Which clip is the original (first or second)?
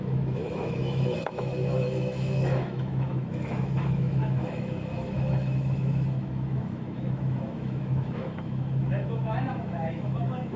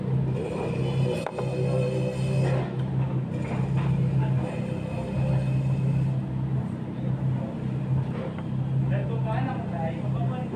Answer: second